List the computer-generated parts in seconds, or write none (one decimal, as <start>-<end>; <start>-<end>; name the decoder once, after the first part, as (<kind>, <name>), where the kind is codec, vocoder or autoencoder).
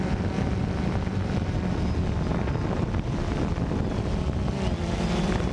4.8-5.5 (vocoder, BigVGAN v2)